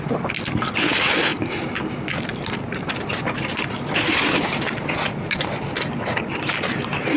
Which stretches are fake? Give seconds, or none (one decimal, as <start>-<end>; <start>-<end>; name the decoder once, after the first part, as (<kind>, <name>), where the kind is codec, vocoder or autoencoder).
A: none